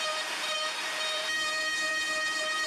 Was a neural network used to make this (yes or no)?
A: yes